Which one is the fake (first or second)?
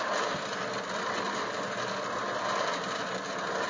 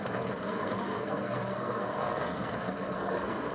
second